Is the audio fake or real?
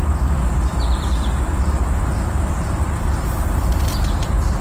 real